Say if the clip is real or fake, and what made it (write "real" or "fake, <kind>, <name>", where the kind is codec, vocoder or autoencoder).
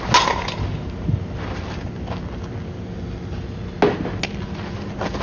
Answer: real